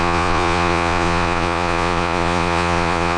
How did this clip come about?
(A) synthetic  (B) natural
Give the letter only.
A